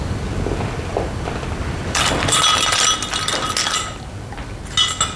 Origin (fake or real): real